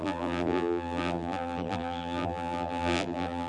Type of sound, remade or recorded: remade